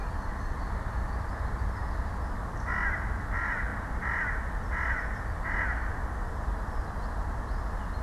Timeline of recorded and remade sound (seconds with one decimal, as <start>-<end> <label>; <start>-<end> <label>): 0.0-8.0 recorded